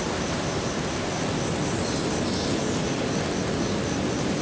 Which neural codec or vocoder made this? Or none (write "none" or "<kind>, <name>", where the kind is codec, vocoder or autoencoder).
none